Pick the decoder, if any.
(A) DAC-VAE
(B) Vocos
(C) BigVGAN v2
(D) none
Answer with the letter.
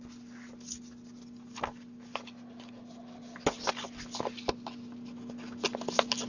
D